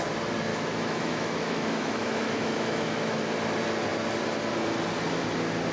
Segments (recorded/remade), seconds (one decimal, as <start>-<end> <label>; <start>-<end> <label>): 0.0-0.5 recorded; 0.5-3.2 remade; 3.2-5.7 recorded